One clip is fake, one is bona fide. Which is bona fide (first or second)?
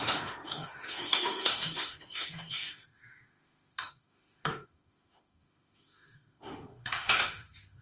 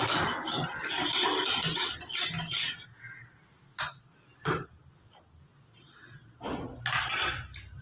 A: second